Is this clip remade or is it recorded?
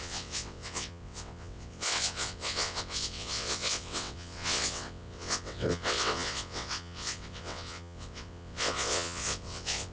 remade